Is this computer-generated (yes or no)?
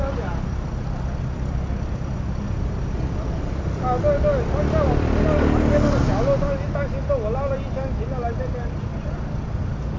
no